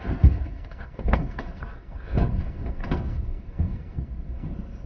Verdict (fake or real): fake